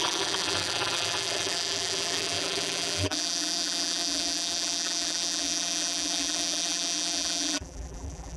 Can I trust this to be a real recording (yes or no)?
no